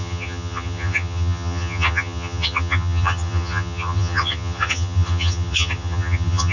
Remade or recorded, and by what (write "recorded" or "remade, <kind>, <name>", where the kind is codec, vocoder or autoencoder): remade, vocoder, HiFi-GAN